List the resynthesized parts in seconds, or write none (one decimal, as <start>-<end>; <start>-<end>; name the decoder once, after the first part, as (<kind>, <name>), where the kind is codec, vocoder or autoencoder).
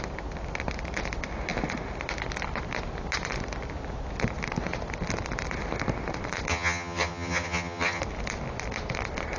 6.5-8.0 (vocoder, HiFi-GAN)